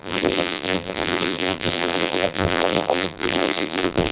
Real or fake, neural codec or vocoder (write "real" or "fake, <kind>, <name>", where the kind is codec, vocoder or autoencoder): fake, vocoder, BigVGAN v2